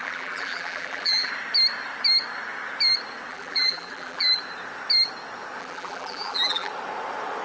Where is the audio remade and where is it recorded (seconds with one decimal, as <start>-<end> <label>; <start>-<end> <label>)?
0.0-1.3 remade; 1.3-3.3 recorded; 3.3-4.3 remade; 4.3-5.6 recorded; 5.6-6.7 remade; 6.7-7.4 recorded